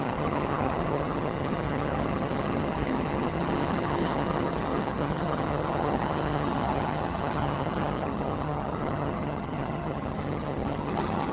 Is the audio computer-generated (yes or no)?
yes